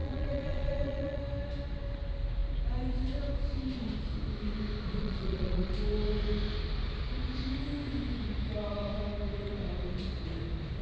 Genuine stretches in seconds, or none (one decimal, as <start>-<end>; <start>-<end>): 1.2-5.0; 5.7-10.8